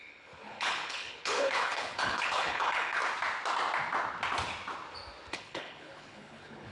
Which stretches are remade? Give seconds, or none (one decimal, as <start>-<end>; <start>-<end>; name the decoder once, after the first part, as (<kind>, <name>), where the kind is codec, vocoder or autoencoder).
0.0-3.0 (codec, HILCodec); 5.3-6.7